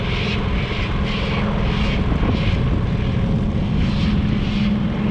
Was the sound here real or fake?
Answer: real